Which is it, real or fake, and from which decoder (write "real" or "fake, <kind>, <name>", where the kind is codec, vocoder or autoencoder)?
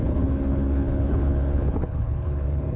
fake, codec, HILCodec